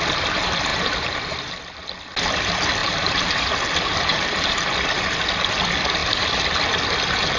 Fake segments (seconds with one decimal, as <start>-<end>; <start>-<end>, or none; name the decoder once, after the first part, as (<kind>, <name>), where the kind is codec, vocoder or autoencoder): 0.7-1.5 (vocoder, BigVGAN v2); 2.8-3.5; 4.1-4.7